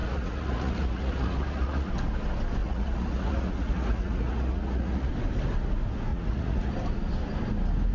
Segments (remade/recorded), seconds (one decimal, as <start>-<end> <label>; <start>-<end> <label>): 0.0-1.9 remade; 1.9-2.6 recorded; 2.6-5.1 remade; 5.1-6.1 recorded; 6.1-6.7 remade; 6.7-7.9 recorded